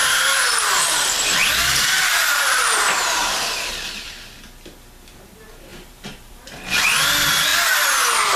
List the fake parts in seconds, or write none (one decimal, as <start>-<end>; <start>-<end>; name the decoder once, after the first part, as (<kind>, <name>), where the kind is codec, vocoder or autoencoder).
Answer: 0.0-3.7 (vocoder, BigVGAN v2); 5.7-7.0